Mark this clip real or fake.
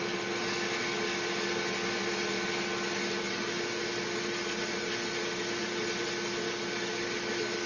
real